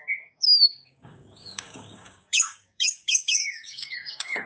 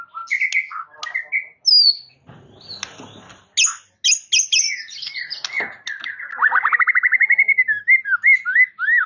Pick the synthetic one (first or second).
first